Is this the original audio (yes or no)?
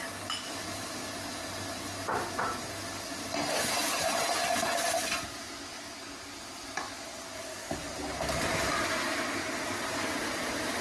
yes